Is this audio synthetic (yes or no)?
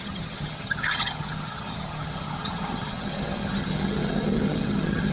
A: yes